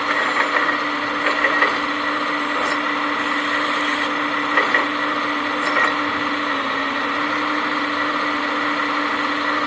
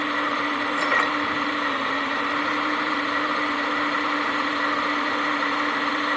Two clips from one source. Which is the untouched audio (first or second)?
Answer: first